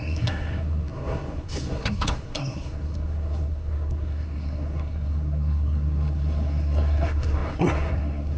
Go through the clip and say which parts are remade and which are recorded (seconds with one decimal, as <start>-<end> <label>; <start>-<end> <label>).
0.0-8.4 remade